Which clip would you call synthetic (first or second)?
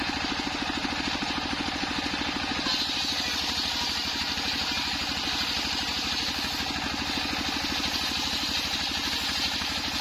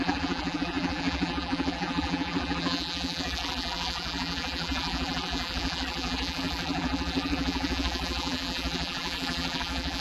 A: second